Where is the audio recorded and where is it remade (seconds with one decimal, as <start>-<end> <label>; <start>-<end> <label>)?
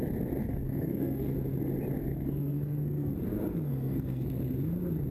0.0-0.4 recorded; 0.4-1.3 remade; 1.3-2.0 recorded; 2.0-3.1 remade; 3.1-3.5 recorded; 3.5-4.5 remade; 4.5-5.1 recorded